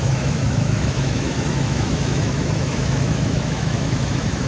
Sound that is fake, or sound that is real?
fake